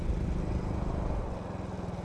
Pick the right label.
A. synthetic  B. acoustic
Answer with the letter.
B